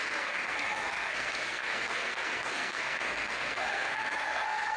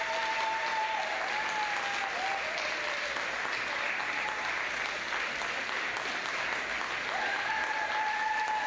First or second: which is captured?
second